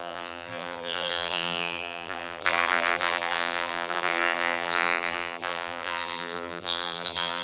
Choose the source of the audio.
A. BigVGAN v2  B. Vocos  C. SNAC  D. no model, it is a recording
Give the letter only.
A